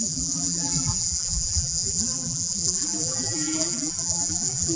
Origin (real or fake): fake